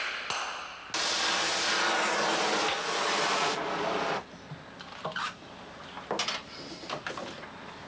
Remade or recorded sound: recorded